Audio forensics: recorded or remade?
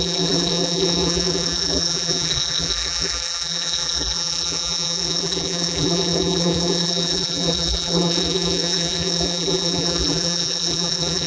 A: remade